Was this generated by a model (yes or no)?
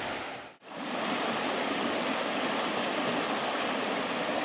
no